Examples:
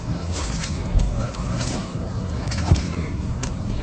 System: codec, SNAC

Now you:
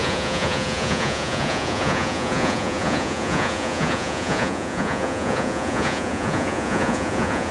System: vocoder, Vocos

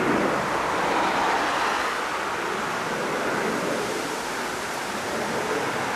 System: none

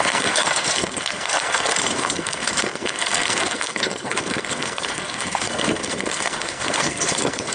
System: codec, SNAC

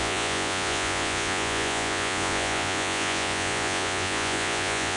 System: vocoder, Vocos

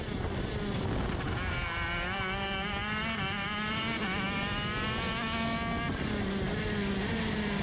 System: none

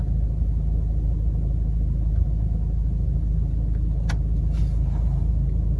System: none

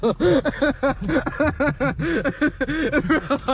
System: none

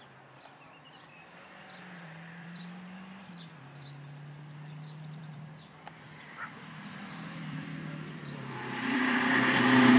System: vocoder, BigVGAN v2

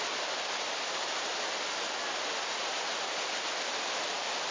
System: none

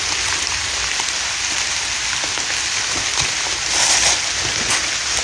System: none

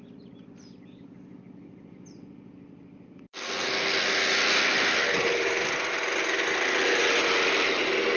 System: none